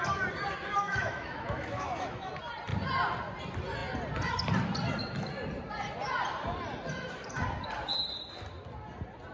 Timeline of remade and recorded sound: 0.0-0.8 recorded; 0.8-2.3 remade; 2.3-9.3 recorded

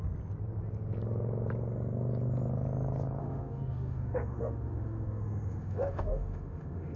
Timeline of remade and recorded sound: 0.0-3.2 recorded; 3.2-7.0 remade

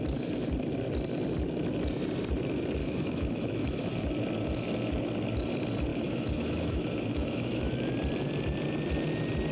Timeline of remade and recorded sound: 0.0-2.8 recorded; 2.8-3.9 remade; 3.9-5.9 recorded; 5.9-7.7 remade; 7.7-9.5 recorded